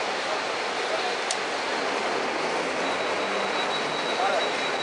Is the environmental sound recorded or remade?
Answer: recorded